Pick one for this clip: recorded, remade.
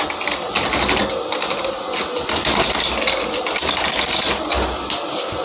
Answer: recorded